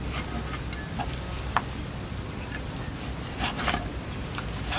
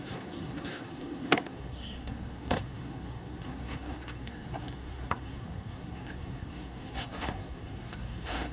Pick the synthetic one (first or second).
second